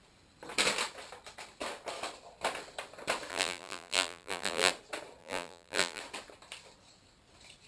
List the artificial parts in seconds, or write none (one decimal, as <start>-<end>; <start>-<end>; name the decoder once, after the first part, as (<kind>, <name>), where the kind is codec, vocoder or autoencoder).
3.3-4.7 (vocoder, BigVGAN v2); 5.2-6.0